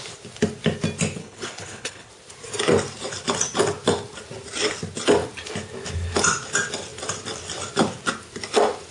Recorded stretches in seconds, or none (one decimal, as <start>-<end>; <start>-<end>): 0.0-1.2; 2.1-8.9